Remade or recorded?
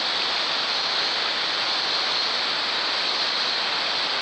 recorded